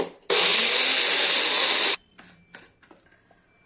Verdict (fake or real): real